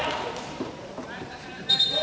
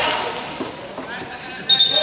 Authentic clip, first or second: second